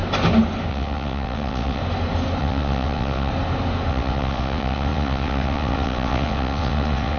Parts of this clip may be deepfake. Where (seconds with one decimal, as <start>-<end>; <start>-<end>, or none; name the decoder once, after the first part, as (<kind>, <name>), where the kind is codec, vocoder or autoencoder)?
0.7-1.8 (vocoder, WaveNeXt); 2.4-3.3; 3.9-7.2